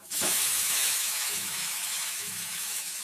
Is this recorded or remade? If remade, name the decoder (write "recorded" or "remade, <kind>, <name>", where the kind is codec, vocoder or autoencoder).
remade, autoencoder, DAC-VAE